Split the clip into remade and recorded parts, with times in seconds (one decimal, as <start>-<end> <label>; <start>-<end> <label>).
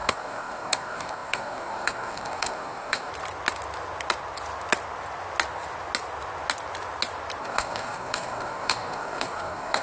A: 0.0-3.1 remade; 3.1-7.4 recorded; 7.4-9.8 remade